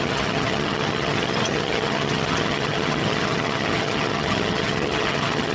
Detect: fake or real fake